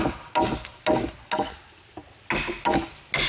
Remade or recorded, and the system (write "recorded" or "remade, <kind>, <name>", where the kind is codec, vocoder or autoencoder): recorded